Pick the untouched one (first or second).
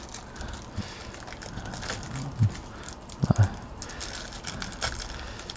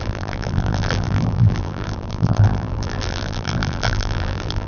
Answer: first